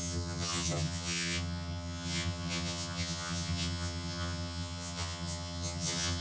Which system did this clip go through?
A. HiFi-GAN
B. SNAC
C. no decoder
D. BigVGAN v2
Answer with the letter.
A